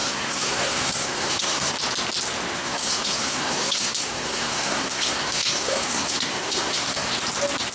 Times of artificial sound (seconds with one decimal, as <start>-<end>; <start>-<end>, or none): 0.0-1.7; 2.5-7.1